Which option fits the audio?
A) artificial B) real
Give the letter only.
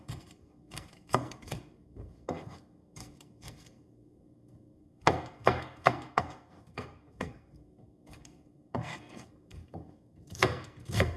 A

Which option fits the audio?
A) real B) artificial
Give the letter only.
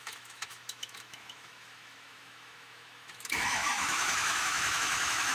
B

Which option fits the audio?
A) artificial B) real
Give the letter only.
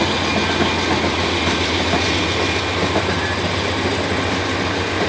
B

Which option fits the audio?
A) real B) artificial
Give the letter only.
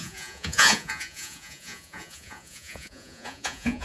B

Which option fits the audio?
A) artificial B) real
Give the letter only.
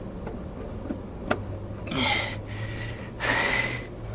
B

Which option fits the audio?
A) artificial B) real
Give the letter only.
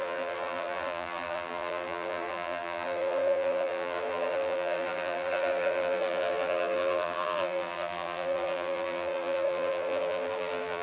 A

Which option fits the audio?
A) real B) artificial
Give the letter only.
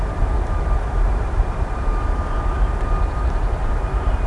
B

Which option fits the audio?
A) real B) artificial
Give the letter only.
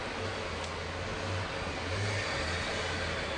A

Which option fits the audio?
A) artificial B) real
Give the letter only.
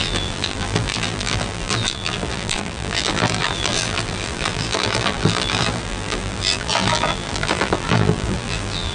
A